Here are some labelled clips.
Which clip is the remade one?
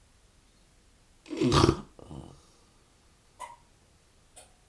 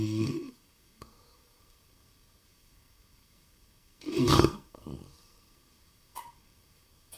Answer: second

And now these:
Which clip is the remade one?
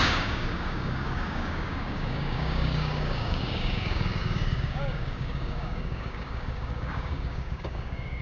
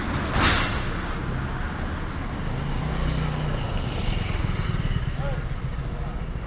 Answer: first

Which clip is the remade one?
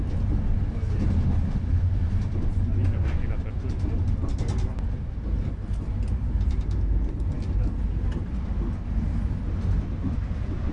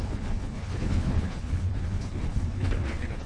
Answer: second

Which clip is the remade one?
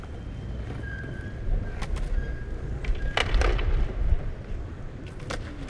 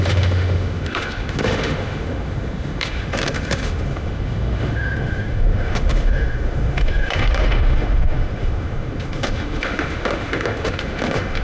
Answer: second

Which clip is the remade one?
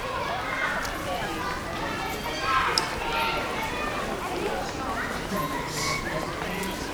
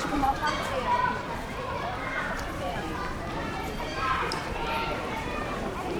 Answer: second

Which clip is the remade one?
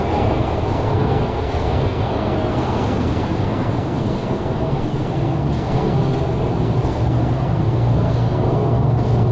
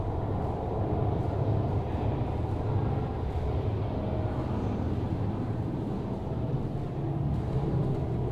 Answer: first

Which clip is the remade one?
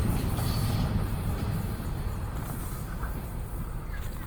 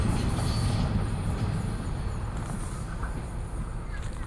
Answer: first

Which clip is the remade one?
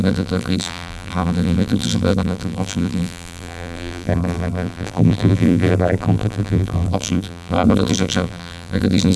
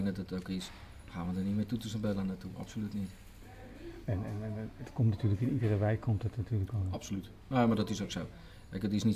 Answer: first